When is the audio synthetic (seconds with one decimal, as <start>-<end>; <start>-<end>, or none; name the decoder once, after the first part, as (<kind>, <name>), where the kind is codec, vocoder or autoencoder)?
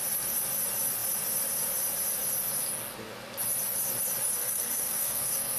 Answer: 4.4-5.6 (codec, SNAC)